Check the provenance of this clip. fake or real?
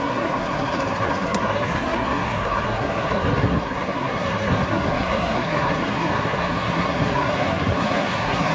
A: fake